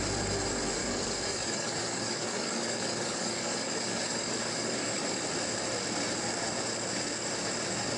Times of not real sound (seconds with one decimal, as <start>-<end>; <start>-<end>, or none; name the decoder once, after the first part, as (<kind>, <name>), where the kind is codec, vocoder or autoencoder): 0.8-5.2 (codec, DAC)